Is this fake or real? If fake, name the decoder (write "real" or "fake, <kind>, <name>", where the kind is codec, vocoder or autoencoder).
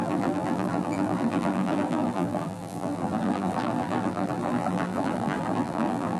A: fake, vocoder, BigVGAN v2